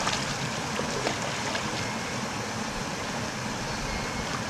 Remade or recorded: recorded